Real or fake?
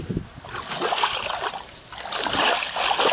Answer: real